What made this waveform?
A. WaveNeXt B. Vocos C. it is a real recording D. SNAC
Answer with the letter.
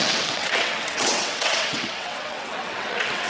A